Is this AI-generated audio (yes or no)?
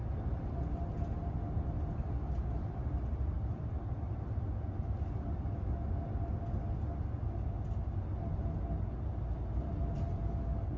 no